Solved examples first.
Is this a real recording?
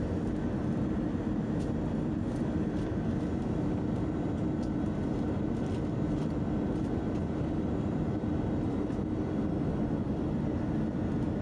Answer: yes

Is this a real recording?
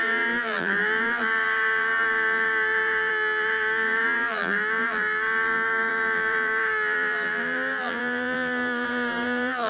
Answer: no